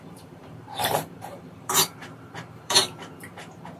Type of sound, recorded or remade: remade